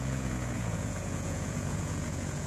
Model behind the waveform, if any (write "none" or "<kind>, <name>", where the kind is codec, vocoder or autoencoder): vocoder, Vocos